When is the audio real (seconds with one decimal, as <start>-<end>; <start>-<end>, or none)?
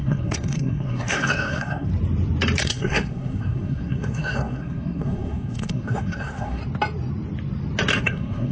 1.9-2.6; 6.6-8.0